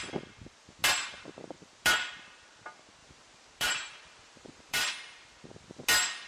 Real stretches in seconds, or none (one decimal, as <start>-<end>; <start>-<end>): 0.0-3.0; 4.9-6.3